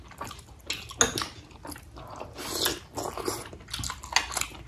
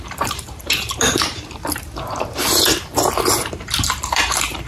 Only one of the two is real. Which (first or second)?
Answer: first